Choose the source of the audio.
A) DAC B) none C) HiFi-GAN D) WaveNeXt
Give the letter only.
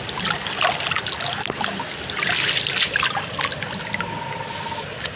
B